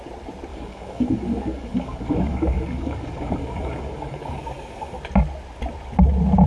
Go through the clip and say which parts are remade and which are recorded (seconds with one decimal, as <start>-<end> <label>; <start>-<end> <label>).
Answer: 0.0-0.5 recorded; 0.5-4.4 remade; 4.4-6.5 recorded